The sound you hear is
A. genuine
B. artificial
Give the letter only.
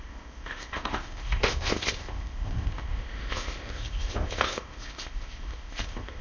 B